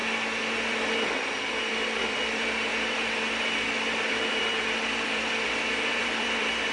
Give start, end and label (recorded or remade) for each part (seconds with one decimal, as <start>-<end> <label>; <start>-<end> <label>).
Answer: 0.0-0.7 recorded; 0.7-2.7 remade; 2.7-4.1 recorded; 4.1-6.7 remade